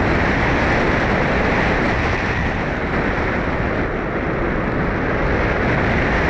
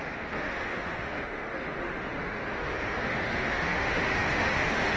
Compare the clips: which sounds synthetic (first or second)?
second